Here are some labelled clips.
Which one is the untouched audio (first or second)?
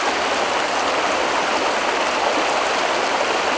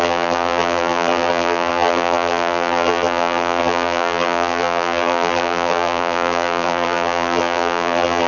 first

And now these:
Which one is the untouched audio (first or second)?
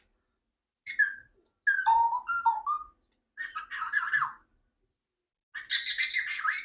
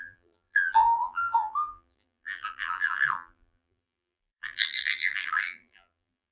first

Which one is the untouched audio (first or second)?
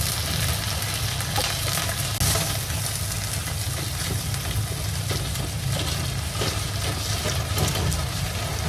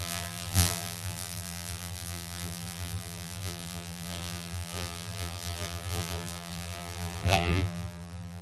first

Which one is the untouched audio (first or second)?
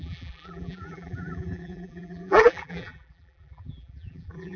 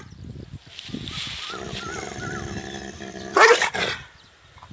second